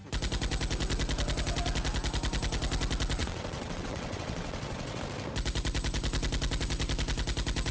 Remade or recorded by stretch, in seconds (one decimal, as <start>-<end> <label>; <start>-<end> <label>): 0.0-3.2 recorded; 3.2-5.0 remade; 5.0-7.7 recorded